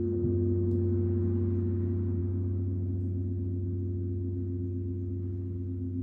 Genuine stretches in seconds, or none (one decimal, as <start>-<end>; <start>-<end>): 0.0-6.0